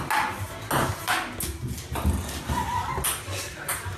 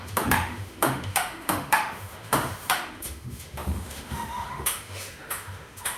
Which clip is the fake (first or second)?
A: second